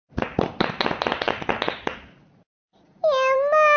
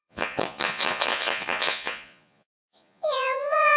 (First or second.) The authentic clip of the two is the first